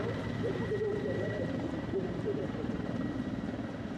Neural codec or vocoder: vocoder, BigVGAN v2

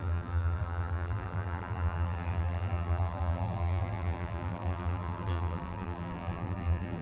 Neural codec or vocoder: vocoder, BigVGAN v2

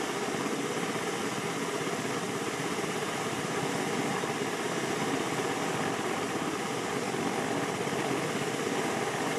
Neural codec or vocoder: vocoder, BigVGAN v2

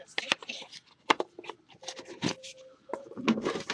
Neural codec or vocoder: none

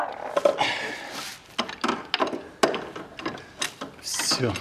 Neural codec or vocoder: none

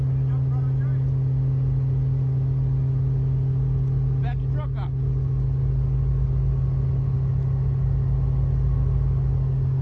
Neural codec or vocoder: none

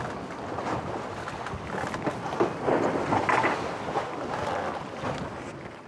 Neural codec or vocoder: none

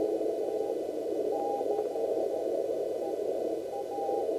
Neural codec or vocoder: vocoder, BigVGAN v2